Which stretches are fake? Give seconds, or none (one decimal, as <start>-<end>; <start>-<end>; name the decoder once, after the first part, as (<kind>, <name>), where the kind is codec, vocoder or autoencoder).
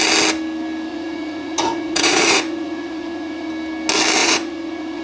0.9-3.5 (vocoder, Vocos); 4.2-5.0